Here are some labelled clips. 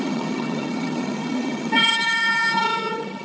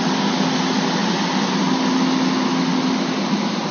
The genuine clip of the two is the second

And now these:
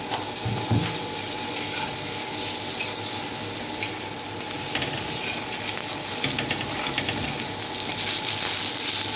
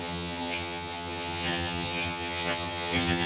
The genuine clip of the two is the first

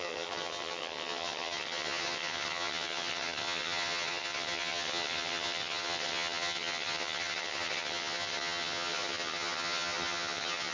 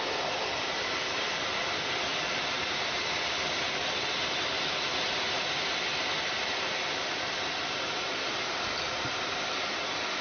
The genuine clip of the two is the second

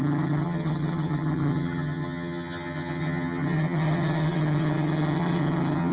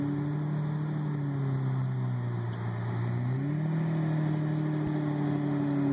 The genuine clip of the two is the second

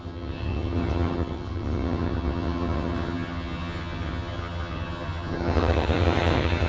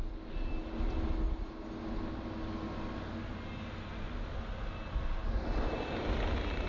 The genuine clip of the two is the second